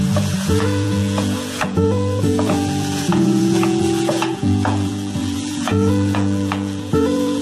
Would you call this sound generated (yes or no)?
yes